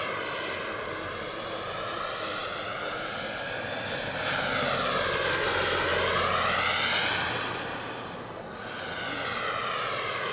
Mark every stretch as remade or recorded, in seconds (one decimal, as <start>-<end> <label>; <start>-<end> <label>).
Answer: 0.0-10.3 recorded